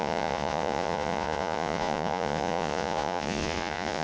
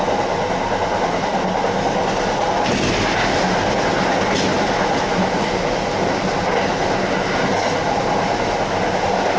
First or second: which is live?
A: second